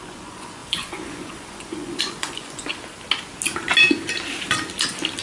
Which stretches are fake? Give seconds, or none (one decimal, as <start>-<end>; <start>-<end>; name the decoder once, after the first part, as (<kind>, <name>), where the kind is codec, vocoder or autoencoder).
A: 0.0-2.7 (vocoder, Vocos)

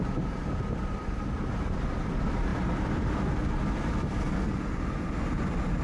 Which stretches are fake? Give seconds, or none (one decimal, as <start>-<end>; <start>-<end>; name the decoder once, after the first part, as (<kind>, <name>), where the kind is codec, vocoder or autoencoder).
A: none

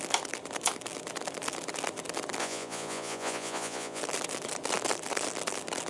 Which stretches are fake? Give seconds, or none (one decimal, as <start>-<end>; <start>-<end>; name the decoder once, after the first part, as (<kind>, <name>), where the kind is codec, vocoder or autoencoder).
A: 2.4-4.0 (vocoder, Vocos)

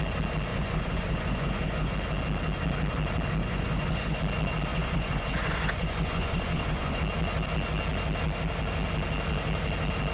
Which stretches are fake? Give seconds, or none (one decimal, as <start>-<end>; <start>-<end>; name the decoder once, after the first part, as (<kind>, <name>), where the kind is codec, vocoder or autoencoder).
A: 0.5-1.9 (vocoder, Vocos); 3.4-4.2; 4.7-7.0

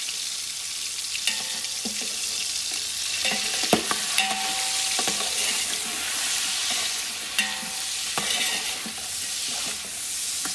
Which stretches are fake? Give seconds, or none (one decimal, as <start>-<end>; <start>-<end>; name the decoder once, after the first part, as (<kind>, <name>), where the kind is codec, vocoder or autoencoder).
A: 6.6-7.4 (vocoder, Vocos)